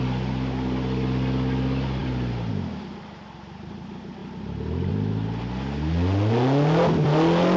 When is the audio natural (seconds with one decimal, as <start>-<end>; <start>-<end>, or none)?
0.0-2.0; 2.5-7.6